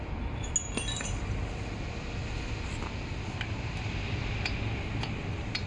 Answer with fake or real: real